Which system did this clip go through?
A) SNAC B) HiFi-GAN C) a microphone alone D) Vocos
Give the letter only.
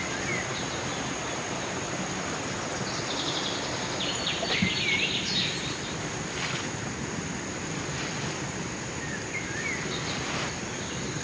C